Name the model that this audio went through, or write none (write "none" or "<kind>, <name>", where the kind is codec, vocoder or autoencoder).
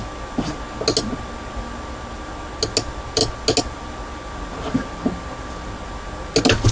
none